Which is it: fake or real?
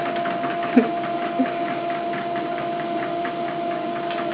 real